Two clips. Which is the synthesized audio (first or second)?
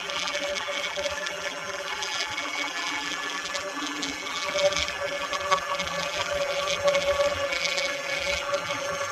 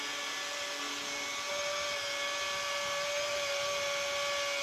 first